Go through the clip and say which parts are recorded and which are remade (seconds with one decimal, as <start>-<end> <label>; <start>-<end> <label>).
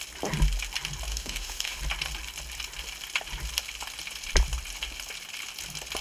0.0-1.1 recorded; 1.1-1.8 remade; 1.8-6.0 recorded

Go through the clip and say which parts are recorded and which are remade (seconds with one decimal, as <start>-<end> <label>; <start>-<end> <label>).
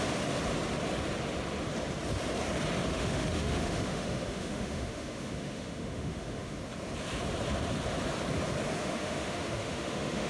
0.0-2.9 recorded; 2.9-6.6 remade; 6.6-8.8 recorded; 8.8-10.3 remade